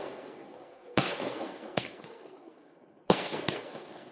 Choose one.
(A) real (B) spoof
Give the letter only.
B